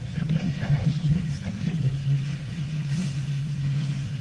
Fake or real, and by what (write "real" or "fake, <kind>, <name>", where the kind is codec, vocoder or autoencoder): fake, codec, SNAC